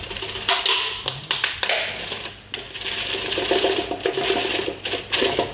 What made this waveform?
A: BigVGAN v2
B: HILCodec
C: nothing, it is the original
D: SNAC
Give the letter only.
C